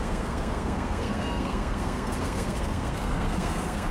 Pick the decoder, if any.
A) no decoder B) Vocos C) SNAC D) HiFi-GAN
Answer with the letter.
C